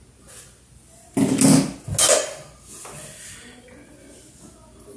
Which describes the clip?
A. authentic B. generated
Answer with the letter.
A